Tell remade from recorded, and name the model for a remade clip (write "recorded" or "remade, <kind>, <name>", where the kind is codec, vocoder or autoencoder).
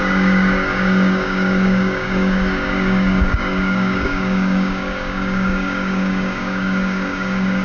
remade, codec, DAC